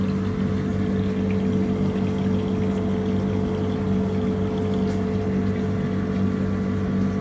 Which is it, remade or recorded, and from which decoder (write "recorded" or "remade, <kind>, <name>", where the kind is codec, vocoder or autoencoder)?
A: recorded